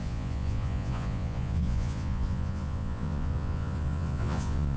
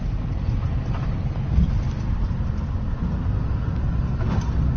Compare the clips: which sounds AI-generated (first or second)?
first